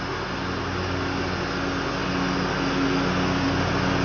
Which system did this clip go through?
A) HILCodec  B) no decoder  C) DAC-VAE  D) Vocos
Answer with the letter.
B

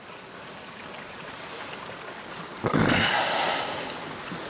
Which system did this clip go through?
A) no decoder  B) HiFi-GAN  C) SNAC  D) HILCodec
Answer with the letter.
A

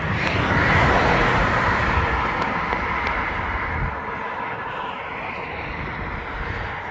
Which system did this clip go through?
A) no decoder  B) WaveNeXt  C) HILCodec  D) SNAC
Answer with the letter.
A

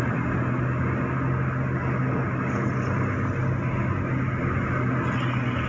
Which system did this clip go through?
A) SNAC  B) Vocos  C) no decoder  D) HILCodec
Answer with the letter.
C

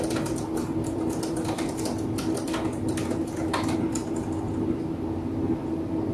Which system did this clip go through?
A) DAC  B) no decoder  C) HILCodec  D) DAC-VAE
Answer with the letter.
B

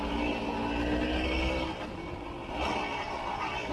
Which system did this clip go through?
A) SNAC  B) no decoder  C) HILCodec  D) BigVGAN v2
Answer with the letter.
B